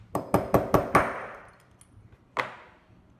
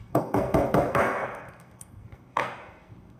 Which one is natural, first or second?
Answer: first